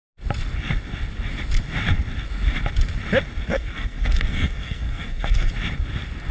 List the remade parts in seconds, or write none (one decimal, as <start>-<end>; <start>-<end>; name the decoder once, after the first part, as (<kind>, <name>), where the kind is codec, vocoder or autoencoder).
3.5-5.5 (codec, SNAC)